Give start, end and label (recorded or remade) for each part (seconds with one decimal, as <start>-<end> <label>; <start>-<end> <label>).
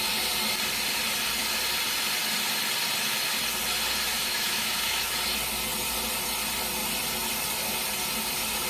0.0-4.1 recorded; 4.1-5.1 remade; 5.1-8.7 recorded